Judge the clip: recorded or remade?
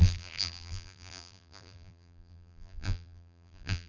remade